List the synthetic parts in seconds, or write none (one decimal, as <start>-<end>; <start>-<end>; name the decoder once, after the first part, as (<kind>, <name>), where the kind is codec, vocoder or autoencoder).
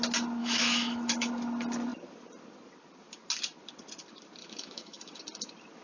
0.4-1.3 (autoencoder, DAC-VAE); 4.4-5.2